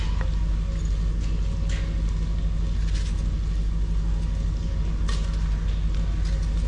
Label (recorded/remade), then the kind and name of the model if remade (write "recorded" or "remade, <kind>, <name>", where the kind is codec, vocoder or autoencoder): recorded